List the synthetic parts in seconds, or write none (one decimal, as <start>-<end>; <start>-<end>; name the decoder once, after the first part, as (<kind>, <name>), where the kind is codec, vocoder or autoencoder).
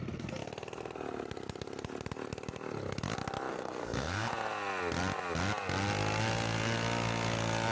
3.5-4.3 (codec, SNAC)